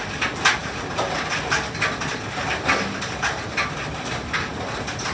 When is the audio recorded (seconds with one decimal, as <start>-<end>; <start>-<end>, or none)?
0.0-5.1